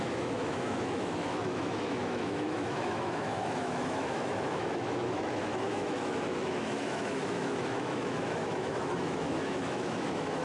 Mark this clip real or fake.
fake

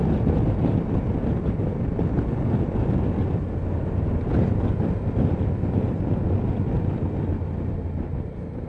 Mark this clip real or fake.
real